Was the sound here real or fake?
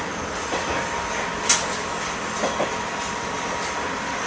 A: real